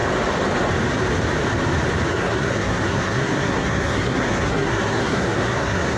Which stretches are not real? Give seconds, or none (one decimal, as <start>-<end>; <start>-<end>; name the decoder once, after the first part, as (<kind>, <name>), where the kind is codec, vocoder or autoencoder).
2.1-6.0 (codec, SNAC)